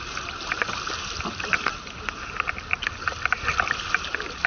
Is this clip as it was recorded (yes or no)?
yes